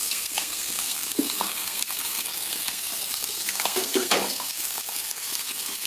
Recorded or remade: remade